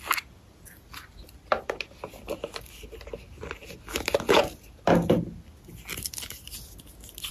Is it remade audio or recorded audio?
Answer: recorded